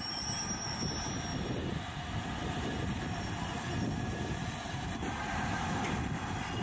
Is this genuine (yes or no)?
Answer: yes